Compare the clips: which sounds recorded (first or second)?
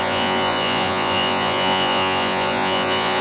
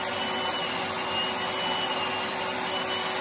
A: second